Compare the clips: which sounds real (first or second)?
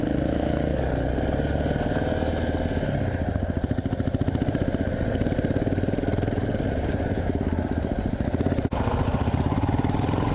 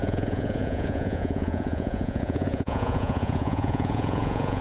first